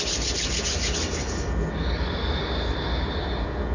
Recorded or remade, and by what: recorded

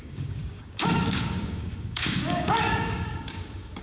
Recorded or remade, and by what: remade, codec, DAC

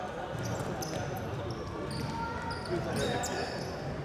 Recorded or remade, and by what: recorded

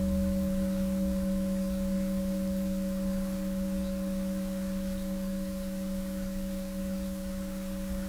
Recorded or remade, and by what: remade, codec, DAC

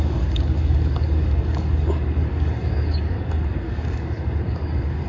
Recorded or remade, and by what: remade, codec, DAC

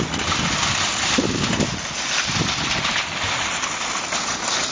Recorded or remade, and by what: recorded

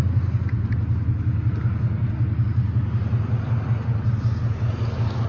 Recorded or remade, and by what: recorded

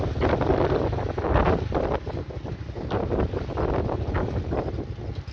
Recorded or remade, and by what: recorded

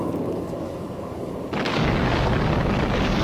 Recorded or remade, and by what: remade, codec, DAC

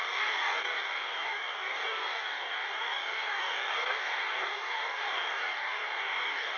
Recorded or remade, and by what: remade, codec, DAC